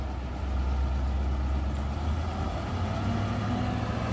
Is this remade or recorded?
recorded